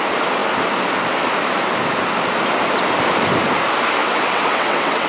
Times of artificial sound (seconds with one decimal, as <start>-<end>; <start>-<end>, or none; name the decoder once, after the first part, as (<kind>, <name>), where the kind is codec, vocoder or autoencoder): 4.0-5.1 (vocoder, WaveNeXt)